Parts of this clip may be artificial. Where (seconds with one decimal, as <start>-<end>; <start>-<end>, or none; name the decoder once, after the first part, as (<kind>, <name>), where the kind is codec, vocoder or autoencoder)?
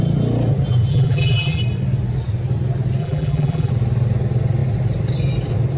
0.9-1.6 (vocoder, BigVGAN v2); 3.0-3.7